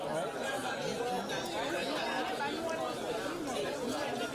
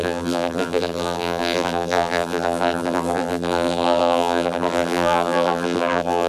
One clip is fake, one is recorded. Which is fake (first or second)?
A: second